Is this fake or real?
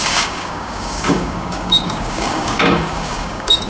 fake